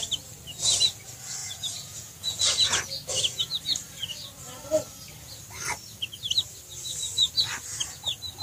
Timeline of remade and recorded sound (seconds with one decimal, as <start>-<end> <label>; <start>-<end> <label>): 0.0-1.4 recorded; 1.4-2.8 remade; 2.8-8.4 recorded